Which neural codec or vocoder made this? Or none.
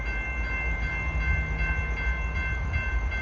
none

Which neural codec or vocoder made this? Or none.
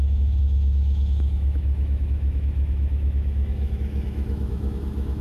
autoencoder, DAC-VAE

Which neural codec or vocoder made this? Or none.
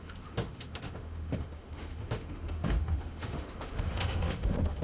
autoencoder, DAC-VAE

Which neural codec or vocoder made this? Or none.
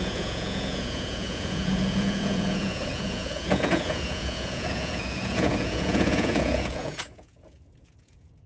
vocoder, Vocos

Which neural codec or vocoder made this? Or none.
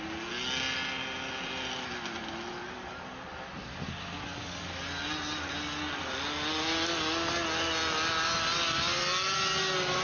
none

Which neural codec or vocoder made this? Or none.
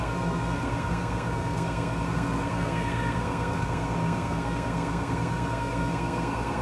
codec, SNAC